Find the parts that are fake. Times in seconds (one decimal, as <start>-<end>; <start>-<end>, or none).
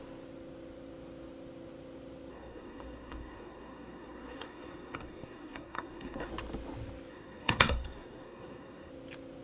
2.3-6.3; 7.1-8.9